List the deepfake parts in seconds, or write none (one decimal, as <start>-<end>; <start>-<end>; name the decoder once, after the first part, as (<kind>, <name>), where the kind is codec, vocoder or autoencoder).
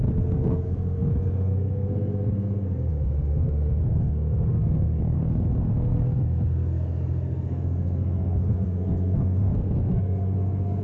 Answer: 0.0-10.8 (codec, SNAC)